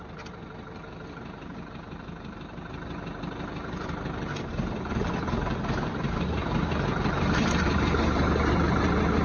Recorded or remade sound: remade